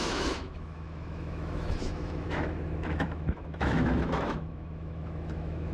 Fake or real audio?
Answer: fake